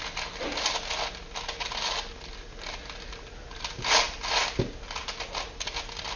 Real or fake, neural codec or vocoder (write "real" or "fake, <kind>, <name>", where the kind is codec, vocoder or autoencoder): real